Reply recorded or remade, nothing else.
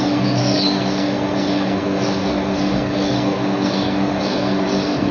remade